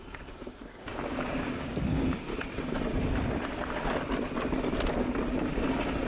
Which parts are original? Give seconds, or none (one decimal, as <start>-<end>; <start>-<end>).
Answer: 2.3-6.1